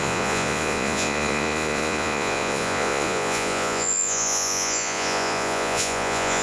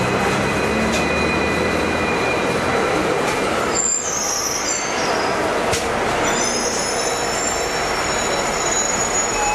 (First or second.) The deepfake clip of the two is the first